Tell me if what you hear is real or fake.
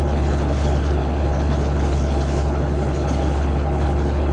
fake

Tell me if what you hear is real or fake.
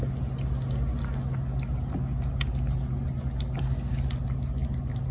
real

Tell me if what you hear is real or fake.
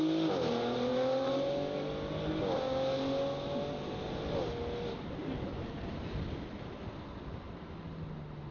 real